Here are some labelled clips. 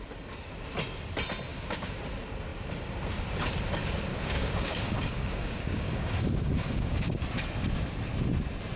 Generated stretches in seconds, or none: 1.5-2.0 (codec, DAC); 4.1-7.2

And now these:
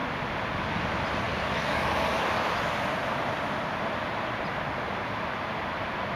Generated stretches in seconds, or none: 1.3-2.5 (codec, DAC)